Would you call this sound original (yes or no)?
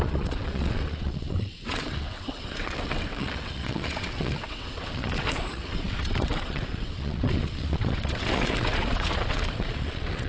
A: no